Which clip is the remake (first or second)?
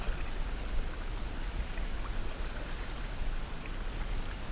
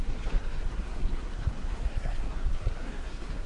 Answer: second